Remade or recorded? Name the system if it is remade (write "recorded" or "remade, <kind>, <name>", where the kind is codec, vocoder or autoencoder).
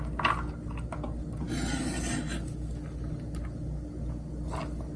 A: recorded